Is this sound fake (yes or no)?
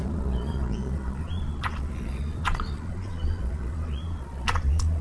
yes